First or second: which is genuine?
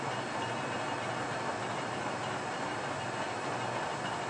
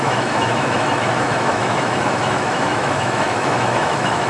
first